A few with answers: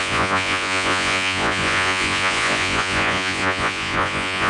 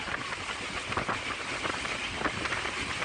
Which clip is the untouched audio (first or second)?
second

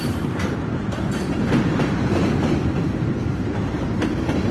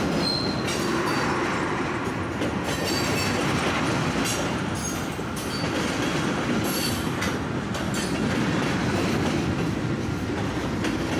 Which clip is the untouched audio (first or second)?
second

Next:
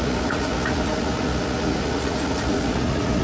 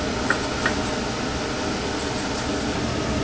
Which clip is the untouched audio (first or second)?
second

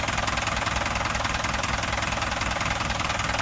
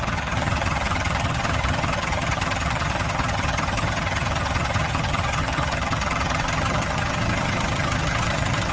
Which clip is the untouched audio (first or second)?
first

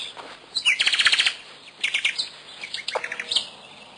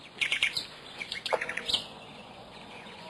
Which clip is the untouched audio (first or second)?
first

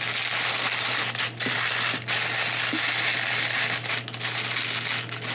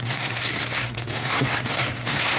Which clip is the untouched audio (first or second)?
first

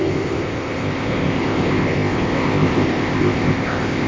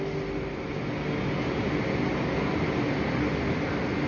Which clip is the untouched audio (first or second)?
second